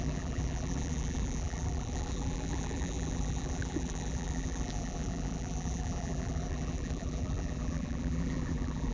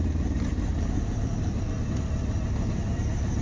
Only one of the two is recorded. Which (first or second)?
second